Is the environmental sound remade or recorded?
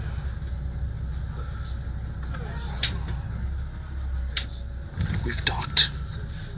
recorded